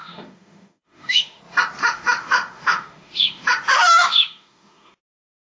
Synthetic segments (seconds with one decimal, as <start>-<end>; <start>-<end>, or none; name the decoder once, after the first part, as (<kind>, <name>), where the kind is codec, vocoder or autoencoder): 0.0-1.4 (autoencoder, DAC-VAE); 1.8-5.0